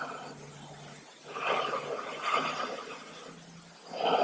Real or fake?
real